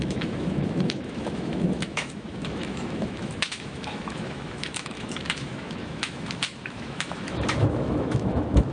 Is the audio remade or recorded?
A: remade